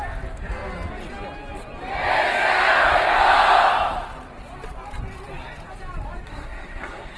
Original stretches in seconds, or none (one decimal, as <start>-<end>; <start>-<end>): 0.0-6.3